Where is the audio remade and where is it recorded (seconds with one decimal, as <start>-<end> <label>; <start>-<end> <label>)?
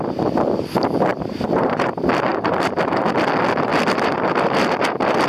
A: 0.0-1.1 recorded; 1.1-1.9 remade; 1.9-2.3 recorded; 2.3-2.8 remade; 2.8-5.3 recorded